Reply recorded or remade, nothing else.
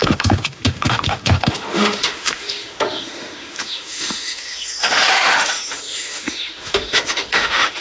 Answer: remade